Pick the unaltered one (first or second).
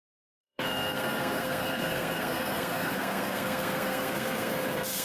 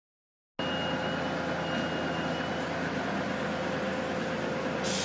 second